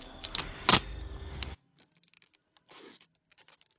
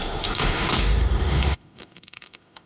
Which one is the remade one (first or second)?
second